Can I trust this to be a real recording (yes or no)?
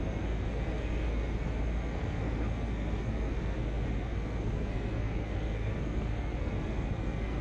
no